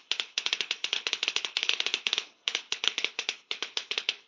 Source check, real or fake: fake